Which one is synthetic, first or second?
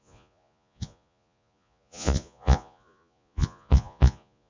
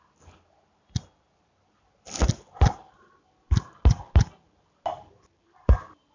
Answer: first